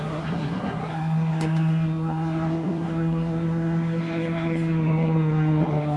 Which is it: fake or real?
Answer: fake